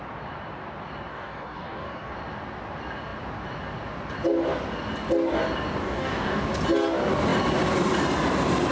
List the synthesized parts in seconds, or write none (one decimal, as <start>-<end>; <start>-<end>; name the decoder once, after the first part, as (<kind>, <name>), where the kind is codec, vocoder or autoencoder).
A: 1.1-2.1 (codec, DAC); 5.8-6.4